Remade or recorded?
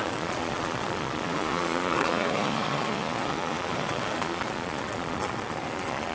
remade